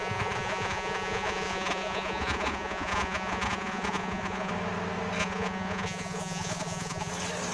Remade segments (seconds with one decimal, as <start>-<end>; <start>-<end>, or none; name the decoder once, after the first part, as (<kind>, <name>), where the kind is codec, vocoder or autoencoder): 0.0-4.5 (vocoder, Vocos); 5.2-7.1